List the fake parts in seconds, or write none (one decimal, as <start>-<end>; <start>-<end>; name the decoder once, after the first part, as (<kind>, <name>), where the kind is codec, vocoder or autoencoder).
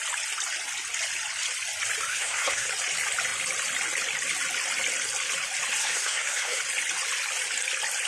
2.1-2.7 (codec, SNAC); 5.8-6.6